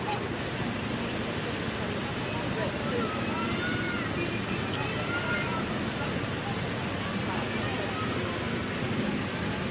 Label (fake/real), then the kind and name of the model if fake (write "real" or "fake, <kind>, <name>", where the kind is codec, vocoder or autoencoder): real